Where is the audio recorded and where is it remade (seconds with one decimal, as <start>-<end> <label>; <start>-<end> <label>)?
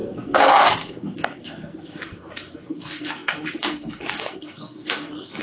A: 0.0-5.4 remade